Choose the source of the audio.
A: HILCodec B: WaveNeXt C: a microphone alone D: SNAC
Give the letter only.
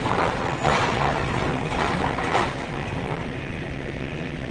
B